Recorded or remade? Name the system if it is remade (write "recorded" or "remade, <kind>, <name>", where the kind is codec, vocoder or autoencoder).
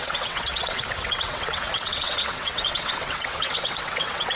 remade, vocoder, WaveNeXt